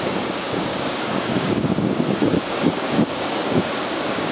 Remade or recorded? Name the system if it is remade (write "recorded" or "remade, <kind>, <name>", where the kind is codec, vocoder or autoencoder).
remade, codec, DAC